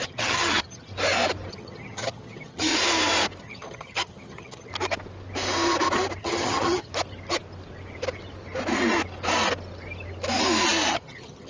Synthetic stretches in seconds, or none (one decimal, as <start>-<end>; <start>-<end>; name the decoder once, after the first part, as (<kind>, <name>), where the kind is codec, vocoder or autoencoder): 0.0-0.9 (vocoder, HiFi-GAN); 1.5-2.7; 3.4-4.7; 6.2-6.9; 10.9-11.5